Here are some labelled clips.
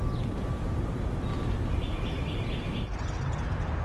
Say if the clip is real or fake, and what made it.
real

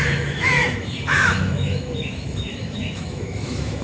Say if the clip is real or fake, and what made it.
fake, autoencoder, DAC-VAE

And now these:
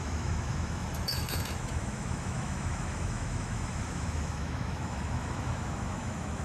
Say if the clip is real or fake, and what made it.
fake, autoencoder, DAC-VAE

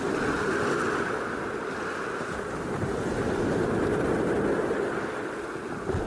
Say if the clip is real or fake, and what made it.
real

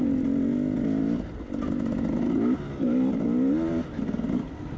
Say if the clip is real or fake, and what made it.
real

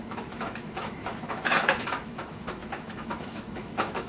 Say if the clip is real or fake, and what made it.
fake, autoencoder, DAC-VAE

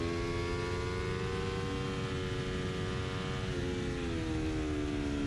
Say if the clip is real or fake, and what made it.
real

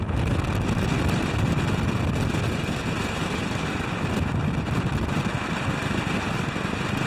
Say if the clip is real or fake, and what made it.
real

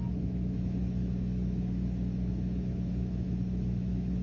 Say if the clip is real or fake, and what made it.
fake, autoencoder, DAC-VAE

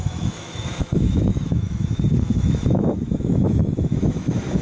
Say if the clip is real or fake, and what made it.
fake, autoencoder, DAC-VAE